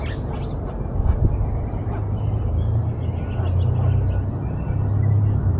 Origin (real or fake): real